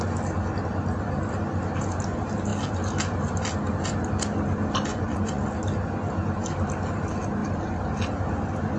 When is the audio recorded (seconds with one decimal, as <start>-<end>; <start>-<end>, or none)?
0.0-4.9; 5.4-8.8